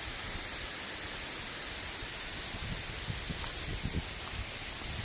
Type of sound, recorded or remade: recorded